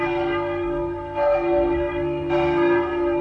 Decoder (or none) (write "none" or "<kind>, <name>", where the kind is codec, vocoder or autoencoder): codec, SNAC